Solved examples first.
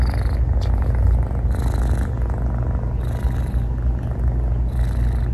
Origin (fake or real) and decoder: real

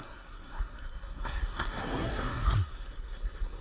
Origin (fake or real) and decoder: fake, codec, SNAC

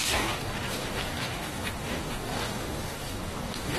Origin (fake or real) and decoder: fake, codec, DAC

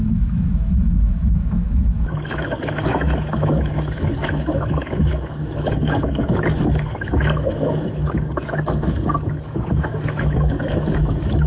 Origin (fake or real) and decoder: fake, autoencoder, DAC-VAE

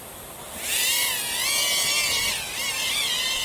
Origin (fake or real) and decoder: real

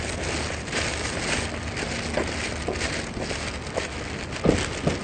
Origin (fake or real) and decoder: real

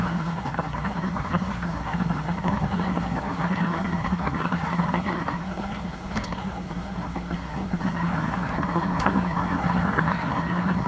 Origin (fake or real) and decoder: fake, codec, SNAC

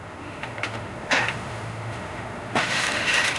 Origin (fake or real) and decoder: fake, autoencoder, DAC-VAE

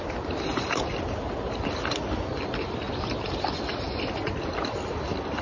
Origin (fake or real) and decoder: real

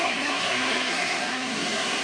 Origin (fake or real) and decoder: fake, codec, SNAC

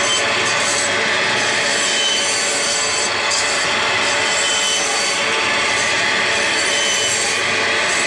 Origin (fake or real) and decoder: real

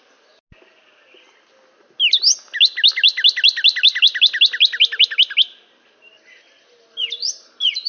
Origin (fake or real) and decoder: real